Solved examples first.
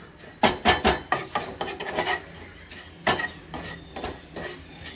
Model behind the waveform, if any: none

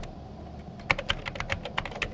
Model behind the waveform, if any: none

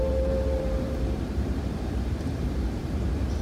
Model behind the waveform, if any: vocoder, BigVGAN v2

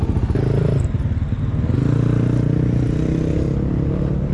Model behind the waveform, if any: none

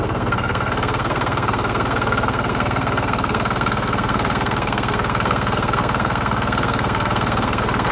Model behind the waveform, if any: codec, SNAC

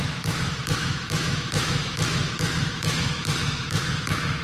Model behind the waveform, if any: autoencoder, DAC-VAE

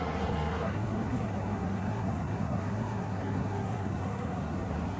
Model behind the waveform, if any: codec, SNAC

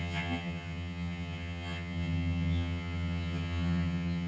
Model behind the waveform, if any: vocoder, HiFi-GAN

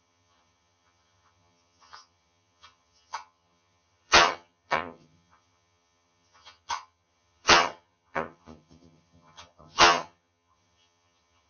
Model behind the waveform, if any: vocoder, HiFi-GAN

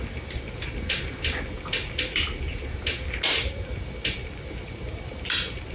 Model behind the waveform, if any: none